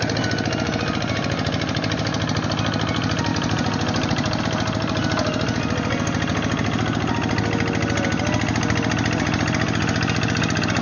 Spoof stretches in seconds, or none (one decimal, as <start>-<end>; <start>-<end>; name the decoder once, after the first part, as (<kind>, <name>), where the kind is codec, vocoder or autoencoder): 3.3-4.4 (vocoder, BigVGAN v2)